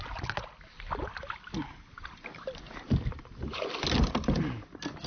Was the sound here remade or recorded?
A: recorded